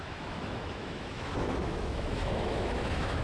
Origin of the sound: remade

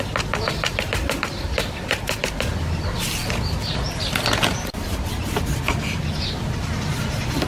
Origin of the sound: recorded